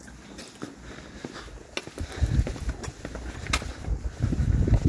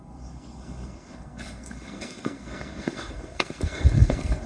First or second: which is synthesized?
second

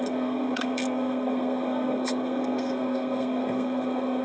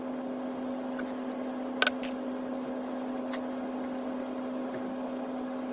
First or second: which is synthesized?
first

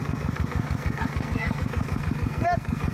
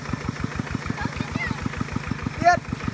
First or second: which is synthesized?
first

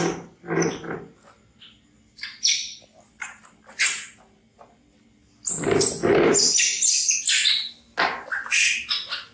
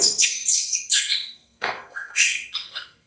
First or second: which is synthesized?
second